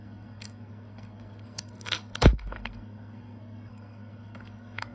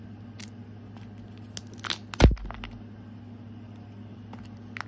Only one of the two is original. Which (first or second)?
second